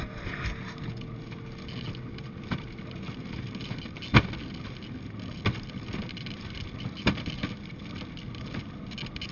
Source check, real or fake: real